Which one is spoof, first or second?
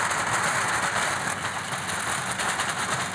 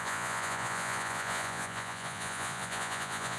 second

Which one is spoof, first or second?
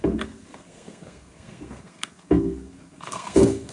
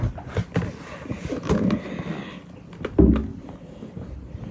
first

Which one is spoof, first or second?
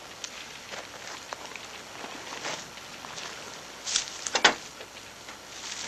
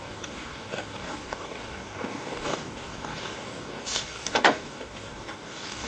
second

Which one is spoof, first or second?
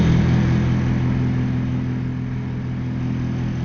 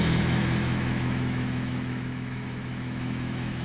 second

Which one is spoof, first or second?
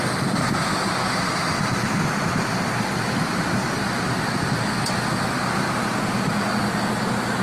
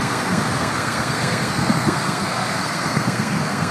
second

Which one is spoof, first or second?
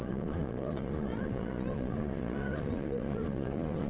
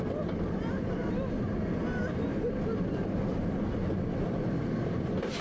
first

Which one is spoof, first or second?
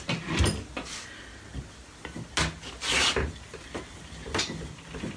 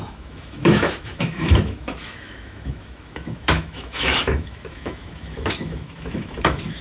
second